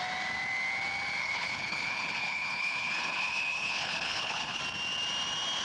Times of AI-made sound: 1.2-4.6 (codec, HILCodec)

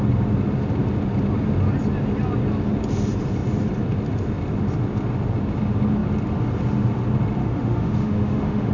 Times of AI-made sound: 7.4-8.7 (autoencoder, DAC-VAE)